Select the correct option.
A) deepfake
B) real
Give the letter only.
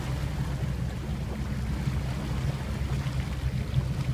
B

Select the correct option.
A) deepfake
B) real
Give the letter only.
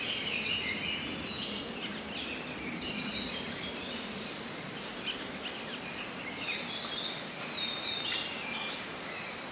B